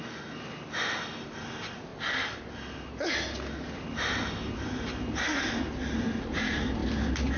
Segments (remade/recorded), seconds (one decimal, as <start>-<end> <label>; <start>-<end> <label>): 0.0-7.4 recorded